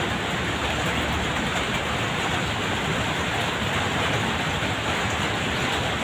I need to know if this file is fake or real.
real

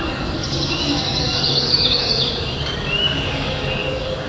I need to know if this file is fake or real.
fake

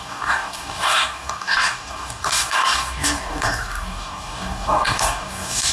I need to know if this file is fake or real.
fake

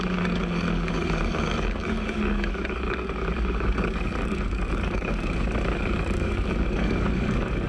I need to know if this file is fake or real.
fake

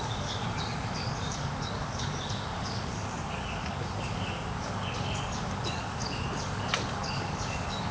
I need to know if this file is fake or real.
fake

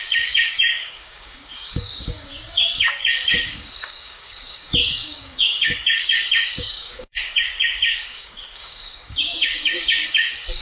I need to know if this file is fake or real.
fake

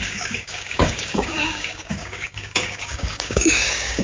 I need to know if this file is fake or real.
fake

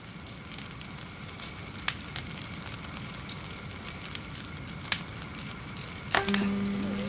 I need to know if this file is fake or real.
real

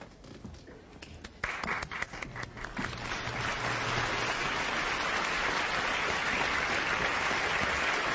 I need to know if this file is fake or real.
real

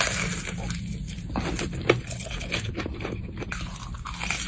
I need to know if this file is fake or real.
real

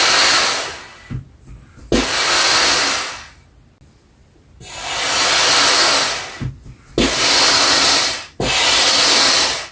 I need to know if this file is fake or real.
real